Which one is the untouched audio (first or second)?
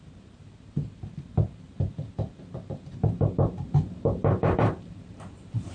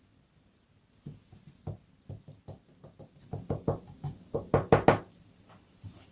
second